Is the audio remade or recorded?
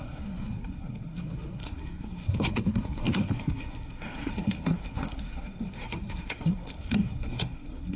remade